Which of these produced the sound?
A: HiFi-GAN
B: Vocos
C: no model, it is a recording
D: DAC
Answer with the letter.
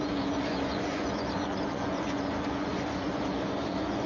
B